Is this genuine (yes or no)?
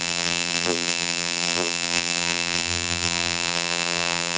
no